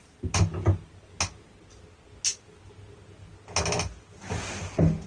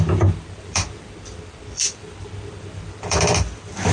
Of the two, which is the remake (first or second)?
second